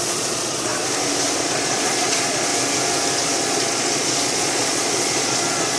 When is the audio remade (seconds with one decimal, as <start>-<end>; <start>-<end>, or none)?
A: 0.0-0.7; 1.4-2.5; 3.2-5.8